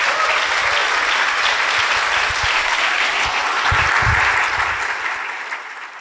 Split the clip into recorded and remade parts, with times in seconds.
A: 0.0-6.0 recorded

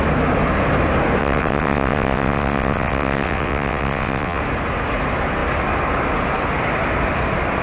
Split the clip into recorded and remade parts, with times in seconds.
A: 0.0-1.2 recorded; 1.2-4.4 remade; 4.4-7.6 recorded

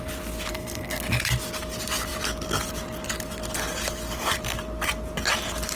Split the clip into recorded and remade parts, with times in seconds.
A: 0.0-0.5 recorded; 0.5-1.0 remade; 1.0-5.8 recorded

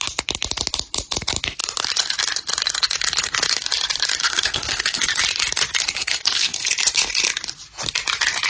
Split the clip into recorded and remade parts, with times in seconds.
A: 0.0-4.2 recorded; 4.2-5.0 remade; 5.0-6.0 recorded; 6.0-6.7 remade; 6.7-8.5 recorded

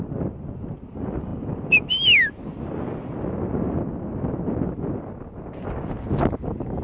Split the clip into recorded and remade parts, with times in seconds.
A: 0.0-6.8 recorded